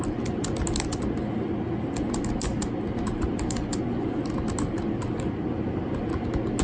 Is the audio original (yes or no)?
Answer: yes